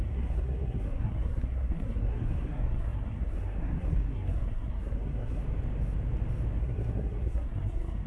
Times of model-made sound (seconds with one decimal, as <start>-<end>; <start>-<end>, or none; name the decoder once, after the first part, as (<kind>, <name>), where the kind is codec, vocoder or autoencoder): 0.0-5.4 (codec, SNAC); 6.6-8.1